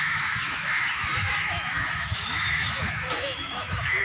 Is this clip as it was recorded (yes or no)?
no